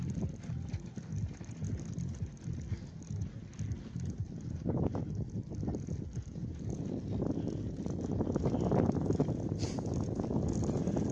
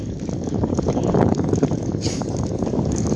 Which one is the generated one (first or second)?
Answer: second